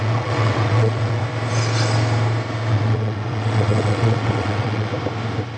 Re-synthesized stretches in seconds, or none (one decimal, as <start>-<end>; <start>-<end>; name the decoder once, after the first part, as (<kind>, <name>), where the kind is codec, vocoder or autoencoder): 0.0-1.2 (vocoder, WaveNeXt); 2.7-4.9